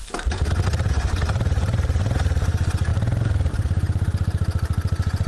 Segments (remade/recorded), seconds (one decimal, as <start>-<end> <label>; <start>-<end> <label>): 0.0-0.9 recorded; 0.9-5.3 remade